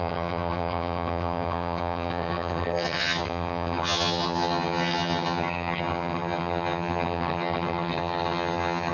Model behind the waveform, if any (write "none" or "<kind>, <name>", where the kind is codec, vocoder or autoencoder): vocoder, HiFi-GAN